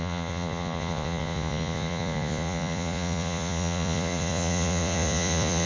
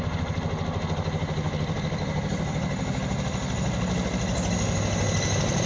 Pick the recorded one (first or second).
second